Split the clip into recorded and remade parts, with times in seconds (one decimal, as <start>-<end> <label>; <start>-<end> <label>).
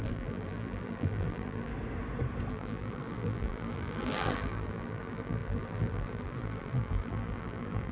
0.0-1.7 remade; 1.7-2.5 recorded; 2.5-7.9 remade